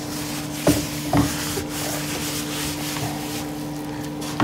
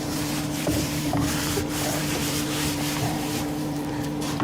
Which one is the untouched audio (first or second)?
first